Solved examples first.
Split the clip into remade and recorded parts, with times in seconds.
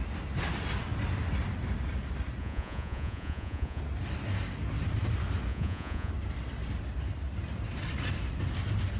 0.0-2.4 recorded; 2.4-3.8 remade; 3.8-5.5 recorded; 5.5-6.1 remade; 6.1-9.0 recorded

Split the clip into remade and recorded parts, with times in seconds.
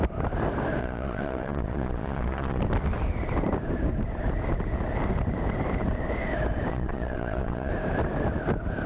0.0-0.8 recorded; 0.8-2.6 remade; 2.6-6.7 recorded; 6.7-7.7 remade; 7.7-8.9 recorded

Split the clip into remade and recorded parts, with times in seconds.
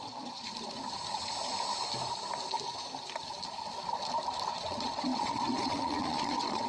0.0-0.5 remade; 0.5-4.5 recorded; 4.5-6.7 remade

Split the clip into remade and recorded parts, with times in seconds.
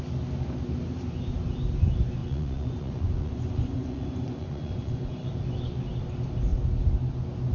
0.0-2.2 recorded; 2.2-5.3 remade; 5.3-7.5 recorded